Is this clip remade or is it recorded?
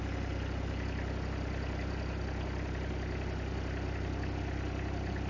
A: recorded